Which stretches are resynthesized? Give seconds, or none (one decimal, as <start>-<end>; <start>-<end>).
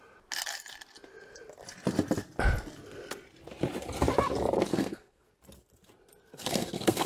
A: 4.7-5.3; 6.3-7.1